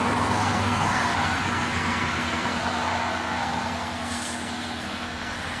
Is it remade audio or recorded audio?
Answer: remade